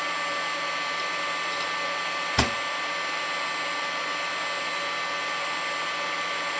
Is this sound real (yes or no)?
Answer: yes